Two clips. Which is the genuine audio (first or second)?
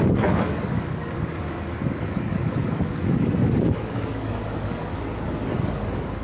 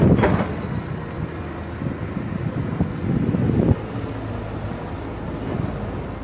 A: second